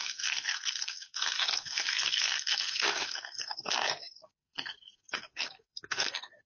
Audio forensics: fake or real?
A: fake